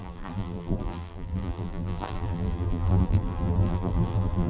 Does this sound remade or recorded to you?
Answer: remade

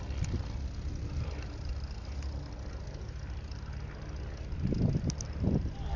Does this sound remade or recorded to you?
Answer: recorded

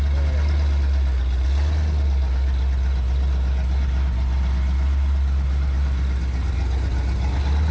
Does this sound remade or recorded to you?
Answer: recorded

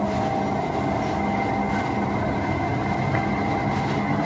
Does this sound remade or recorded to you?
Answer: recorded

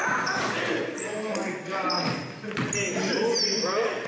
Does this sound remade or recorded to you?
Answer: recorded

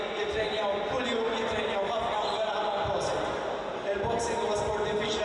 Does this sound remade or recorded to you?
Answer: recorded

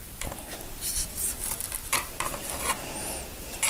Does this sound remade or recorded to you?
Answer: recorded